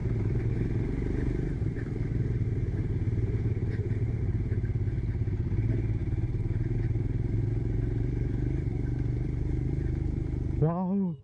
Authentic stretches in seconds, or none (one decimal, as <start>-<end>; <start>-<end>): 4.2-6.0; 10.6-11.2